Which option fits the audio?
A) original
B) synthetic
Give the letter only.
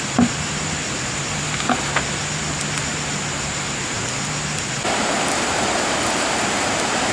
A